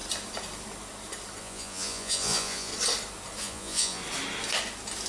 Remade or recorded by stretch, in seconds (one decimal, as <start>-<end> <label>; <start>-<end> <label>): 0.0-1.4 recorded; 1.4-2.7 remade; 2.7-3.4 recorded; 3.4-4.0 remade; 4.0-5.1 recorded